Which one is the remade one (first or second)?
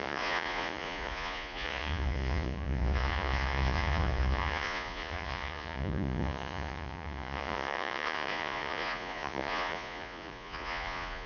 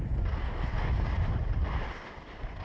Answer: first